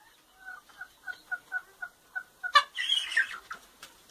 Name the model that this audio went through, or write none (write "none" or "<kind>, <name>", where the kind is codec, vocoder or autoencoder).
none